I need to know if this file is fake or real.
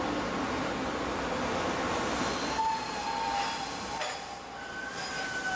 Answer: real